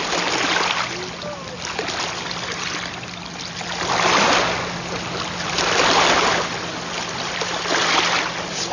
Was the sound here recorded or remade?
recorded